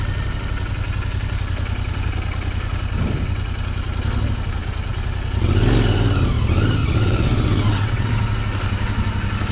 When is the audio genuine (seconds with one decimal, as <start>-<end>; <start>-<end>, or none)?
0.0-6.8; 8.1-9.5